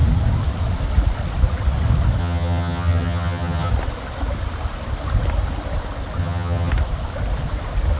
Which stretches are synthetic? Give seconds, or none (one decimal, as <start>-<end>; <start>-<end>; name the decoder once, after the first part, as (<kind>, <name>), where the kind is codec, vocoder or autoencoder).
2.2-3.7 (vocoder, HiFi-GAN); 6.2-6.7